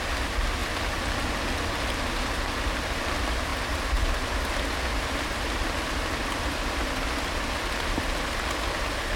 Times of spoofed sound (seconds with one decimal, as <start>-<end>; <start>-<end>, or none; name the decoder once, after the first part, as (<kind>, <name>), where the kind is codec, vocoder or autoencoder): 0.6-1.3 (vocoder, BigVGAN v2); 3.5-7.1